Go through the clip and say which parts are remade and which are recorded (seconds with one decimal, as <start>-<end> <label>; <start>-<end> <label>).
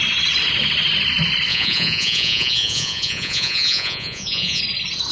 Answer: 0.0-1.5 recorded; 1.5-4.6 remade; 4.6-5.1 recorded